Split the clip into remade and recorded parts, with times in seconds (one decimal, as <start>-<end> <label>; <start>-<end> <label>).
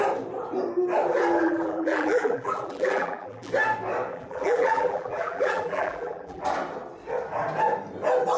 0.0-1.4 recorded; 1.4-3.5 remade; 3.5-4.1 recorded; 4.1-6.4 remade; 6.4-8.4 recorded